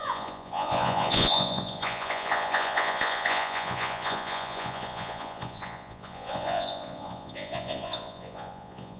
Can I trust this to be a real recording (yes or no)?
no